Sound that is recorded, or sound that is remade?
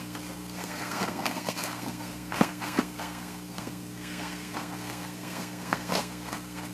remade